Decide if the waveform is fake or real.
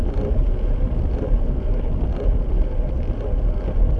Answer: real